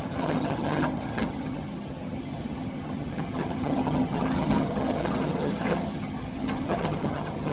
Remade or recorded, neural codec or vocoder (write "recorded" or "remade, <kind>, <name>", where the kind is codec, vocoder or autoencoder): remade, vocoder, HiFi-GAN